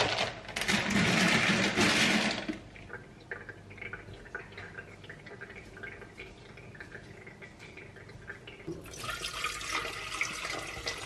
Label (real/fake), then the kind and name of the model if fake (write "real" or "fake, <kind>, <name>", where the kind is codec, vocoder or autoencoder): real